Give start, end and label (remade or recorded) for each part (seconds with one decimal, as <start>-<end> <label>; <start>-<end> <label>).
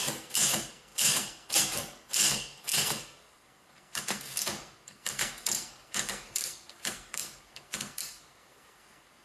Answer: 0.0-9.2 remade